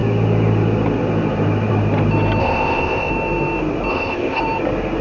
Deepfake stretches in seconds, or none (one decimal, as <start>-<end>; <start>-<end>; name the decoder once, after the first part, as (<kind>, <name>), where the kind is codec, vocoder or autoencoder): 2.4-3.1 (codec, ZipCodec); 3.9-4.4